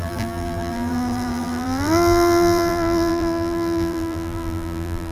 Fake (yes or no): yes